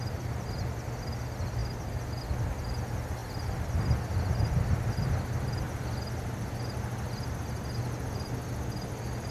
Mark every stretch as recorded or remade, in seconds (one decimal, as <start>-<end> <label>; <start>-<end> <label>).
0.0-9.3 recorded